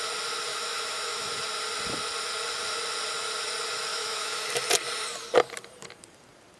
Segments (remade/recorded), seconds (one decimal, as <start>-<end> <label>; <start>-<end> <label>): 0.0-0.5 recorded; 0.5-1.3 remade; 1.3-3.9 recorded; 3.9-4.5 remade; 4.5-6.6 recorded